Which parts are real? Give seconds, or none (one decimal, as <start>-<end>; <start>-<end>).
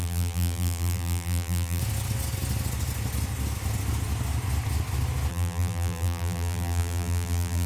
1.8-5.3